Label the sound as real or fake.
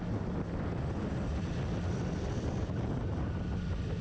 real